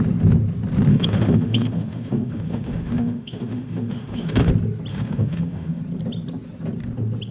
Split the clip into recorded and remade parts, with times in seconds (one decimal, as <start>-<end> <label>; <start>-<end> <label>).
0.0-0.9 recorded; 0.9-4.5 remade; 4.5-4.9 recorded; 4.9-5.8 remade; 5.8-7.3 recorded